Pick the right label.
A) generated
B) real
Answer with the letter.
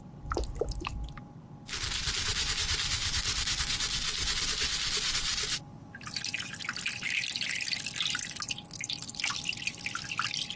B